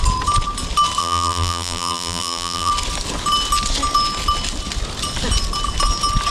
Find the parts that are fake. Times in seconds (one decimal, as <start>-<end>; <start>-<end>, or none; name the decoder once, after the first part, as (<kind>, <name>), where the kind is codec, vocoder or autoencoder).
1.0-2.7 (vocoder, BigVGAN v2)

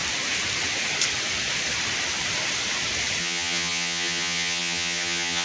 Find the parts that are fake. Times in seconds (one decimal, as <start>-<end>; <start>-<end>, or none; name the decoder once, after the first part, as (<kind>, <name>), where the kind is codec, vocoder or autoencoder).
3.2-5.4 (vocoder, HiFi-GAN)

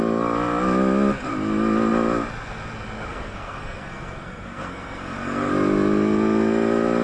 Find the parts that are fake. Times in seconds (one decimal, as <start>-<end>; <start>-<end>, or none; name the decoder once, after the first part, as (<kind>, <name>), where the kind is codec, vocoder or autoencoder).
3.1-5.5 (codec, SNAC)

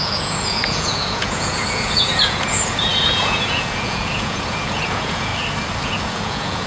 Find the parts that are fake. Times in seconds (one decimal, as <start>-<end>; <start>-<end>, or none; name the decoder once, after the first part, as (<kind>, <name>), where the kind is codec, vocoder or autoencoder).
0.0-5.3 (vocoder, Vocos); 5.8-6.7